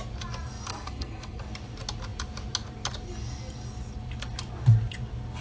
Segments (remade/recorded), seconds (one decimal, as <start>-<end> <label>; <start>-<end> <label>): 0.0-0.7 recorded; 0.7-1.4 remade; 1.4-5.4 recorded